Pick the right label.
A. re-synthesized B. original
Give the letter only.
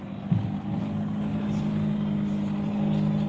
B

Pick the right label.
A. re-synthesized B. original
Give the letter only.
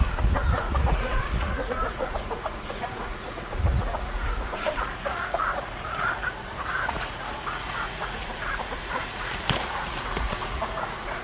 A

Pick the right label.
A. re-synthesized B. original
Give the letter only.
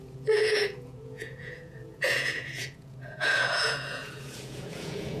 A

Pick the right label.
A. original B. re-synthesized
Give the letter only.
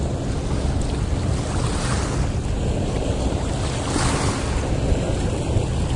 A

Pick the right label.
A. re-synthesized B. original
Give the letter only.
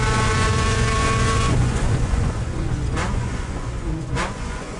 A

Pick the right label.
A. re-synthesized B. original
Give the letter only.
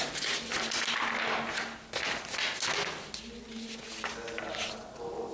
B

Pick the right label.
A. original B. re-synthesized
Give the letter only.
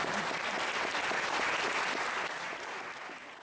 A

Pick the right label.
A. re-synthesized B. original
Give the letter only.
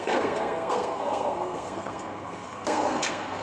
A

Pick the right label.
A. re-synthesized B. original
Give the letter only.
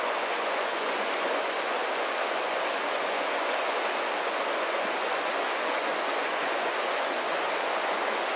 A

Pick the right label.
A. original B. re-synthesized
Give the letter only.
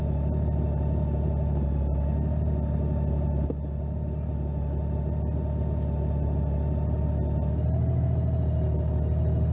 A